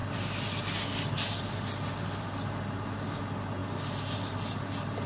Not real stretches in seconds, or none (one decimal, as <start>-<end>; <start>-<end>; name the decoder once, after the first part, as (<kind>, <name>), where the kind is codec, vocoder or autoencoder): none